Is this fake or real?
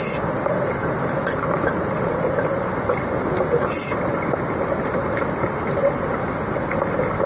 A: real